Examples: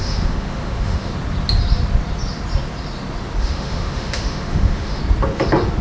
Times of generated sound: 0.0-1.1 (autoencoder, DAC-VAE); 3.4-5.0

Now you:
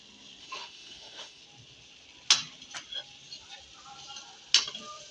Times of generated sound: 0.4-1.4 (autoencoder, DAC-VAE)

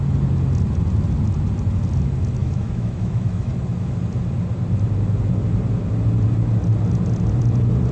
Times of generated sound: 2.4-3.5 (autoencoder, DAC-VAE)